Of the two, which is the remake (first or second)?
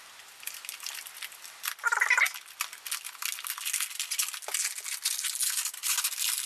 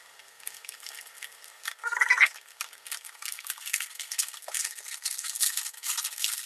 second